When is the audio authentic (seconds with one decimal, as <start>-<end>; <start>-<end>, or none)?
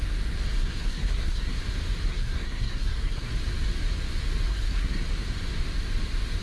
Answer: 0.0-0.6; 1.6-2.1; 3.3-4.5; 5.0-6.4